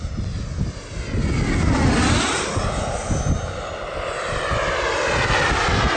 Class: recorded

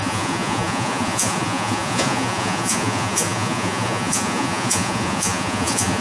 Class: remade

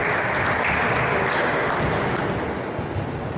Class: recorded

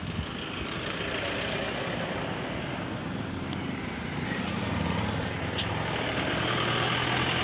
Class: recorded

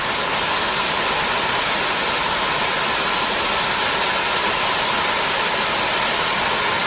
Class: recorded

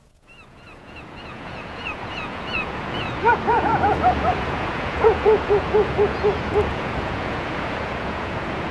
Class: remade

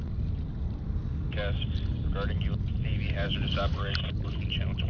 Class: recorded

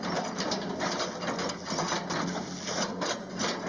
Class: recorded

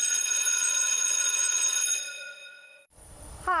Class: remade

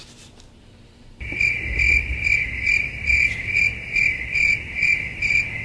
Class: recorded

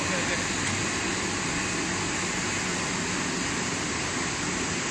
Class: recorded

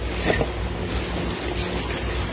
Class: recorded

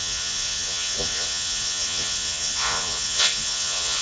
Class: remade